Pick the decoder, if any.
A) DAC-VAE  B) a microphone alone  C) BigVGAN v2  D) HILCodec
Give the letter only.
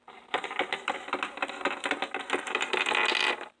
B